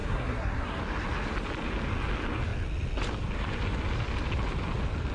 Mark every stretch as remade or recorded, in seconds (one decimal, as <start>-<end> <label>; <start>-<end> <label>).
0.0-0.8 remade; 0.8-5.1 recorded